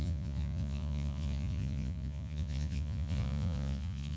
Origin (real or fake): fake